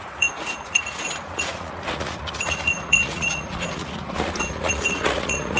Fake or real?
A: fake